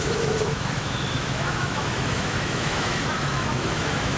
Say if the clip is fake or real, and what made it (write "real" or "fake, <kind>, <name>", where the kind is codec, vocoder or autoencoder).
fake, autoencoder, DAC-VAE